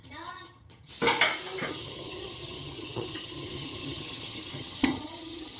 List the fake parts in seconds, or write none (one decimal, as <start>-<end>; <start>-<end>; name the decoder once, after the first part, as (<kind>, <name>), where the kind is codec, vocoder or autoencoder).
0.0-0.9 (vocoder, HiFi-GAN); 1.7-5.6